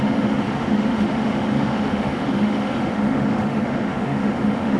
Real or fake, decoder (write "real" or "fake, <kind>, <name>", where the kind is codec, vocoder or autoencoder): fake, autoencoder, DAC-VAE